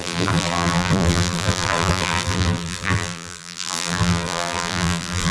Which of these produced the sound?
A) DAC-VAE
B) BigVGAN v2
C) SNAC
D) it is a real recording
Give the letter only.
B